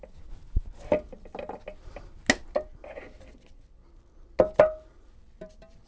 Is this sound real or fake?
real